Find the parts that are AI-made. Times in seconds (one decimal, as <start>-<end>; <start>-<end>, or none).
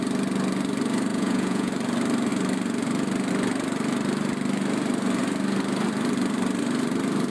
1.1-1.7